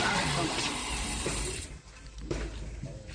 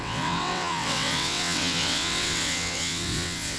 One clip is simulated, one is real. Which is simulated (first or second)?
second